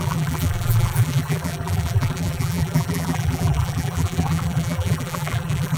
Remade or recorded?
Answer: remade